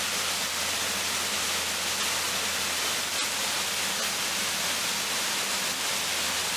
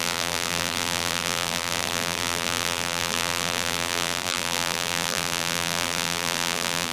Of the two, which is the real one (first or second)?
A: first